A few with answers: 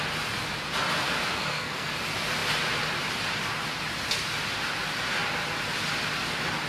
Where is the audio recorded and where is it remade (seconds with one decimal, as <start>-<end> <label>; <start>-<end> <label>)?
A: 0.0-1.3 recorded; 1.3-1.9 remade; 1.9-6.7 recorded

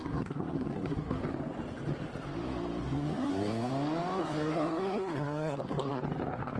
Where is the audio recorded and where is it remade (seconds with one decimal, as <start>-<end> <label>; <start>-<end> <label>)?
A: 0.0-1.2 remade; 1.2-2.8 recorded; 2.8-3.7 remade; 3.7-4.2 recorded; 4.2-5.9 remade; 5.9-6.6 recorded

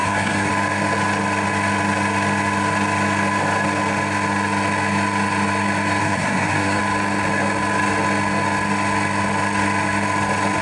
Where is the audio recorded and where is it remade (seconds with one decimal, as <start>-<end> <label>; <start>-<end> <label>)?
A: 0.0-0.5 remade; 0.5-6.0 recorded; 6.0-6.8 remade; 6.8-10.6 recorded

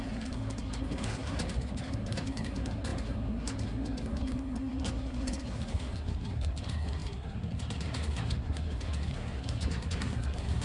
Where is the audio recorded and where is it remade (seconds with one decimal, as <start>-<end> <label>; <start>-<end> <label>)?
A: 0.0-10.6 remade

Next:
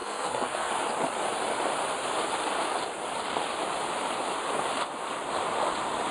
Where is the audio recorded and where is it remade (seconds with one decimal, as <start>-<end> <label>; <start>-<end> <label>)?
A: 0.0-0.7 remade; 0.7-6.1 recorded

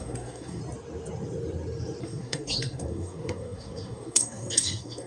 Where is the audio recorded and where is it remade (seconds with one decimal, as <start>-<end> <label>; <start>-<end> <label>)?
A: 0.0-0.6 remade; 0.6-2.0 recorded; 2.0-5.1 remade